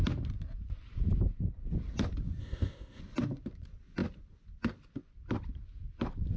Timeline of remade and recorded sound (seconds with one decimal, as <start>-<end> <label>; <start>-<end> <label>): 0.0-2.4 recorded; 2.4-3.0 remade; 3.0-6.4 recorded

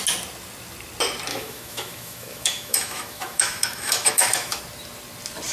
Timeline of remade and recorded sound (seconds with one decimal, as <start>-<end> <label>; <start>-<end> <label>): 0.0-1.3 recorded; 1.3-4.6 remade; 4.6-5.5 recorded

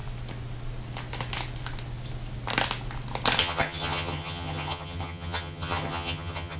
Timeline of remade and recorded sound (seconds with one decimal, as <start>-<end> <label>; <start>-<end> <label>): 0.0-3.4 recorded; 3.4-6.6 remade

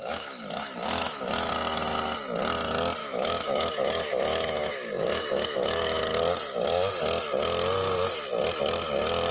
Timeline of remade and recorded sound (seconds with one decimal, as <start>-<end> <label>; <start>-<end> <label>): 0.0-1.5 remade; 1.5-3.0 recorded; 3.0-6.0 remade; 6.0-9.3 recorded

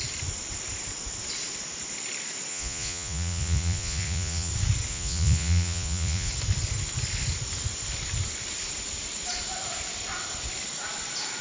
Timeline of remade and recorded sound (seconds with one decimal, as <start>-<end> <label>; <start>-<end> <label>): 0.0-2.5 recorded; 2.5-4.5 remade; 4.5-4.9 recorded; 4.9-6.3 remade; 6.3-11.4 recorded

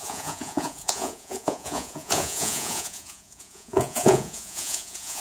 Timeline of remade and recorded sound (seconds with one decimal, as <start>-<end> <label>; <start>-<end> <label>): 0.0-5.2 remade